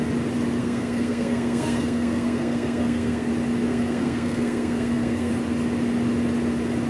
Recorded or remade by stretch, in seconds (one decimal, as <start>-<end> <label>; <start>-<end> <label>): 0.0-0.6 recorded; 0.6-3.3 remade; 3.3-3.7 recorded; 3.7-5.3 remade; 5.3-6.9 recorded